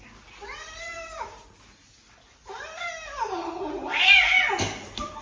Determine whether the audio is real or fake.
real